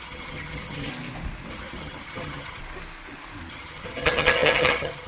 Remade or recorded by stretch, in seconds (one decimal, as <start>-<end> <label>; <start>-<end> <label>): 0.0-0.9 remade; 0.9-1.5 recorded; 1.5-2.6 remade; 2.6-3.5 recorded; 3.5-5.1 remade